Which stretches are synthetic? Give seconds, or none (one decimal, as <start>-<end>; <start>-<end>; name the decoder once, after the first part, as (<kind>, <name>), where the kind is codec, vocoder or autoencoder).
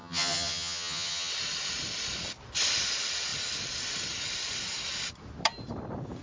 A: 0.0-1.3 (vocoder, HiFi-GAN)